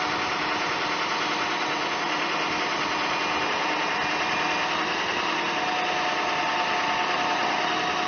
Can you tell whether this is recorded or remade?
recorded